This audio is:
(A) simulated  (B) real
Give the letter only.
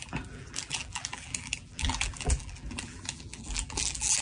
A